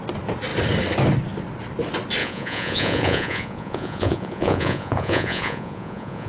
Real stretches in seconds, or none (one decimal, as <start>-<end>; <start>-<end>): 0.0-2.2